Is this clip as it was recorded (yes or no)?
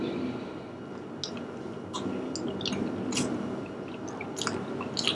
yes